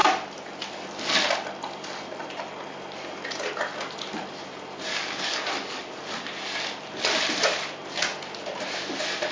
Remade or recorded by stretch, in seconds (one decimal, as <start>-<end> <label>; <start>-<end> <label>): 0.0-4.9 recorded; 4.9-6.0 remade; 6.0-9.3 recorded